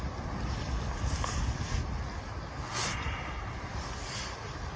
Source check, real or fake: real